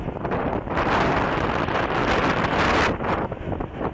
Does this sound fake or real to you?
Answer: real